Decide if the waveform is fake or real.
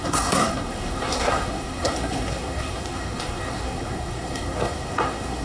fake